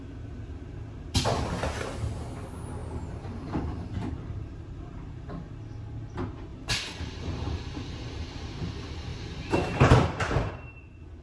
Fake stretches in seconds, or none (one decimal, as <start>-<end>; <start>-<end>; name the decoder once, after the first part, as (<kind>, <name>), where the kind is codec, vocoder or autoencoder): 2.8-5.5 (vocoder, BigVGAN v2); 6.5-7.6; 9.1-10.5